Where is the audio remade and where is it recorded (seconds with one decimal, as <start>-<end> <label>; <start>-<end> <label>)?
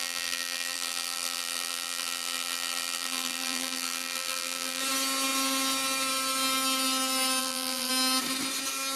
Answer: 0.0-4.8 remade; 4.8-7.4 recorded; 7.4-7.9 remade; 7.9-9.0 recorded